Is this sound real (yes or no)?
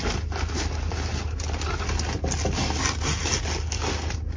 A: yes